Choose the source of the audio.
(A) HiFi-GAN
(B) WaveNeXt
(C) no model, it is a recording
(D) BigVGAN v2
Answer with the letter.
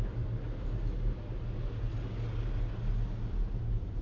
C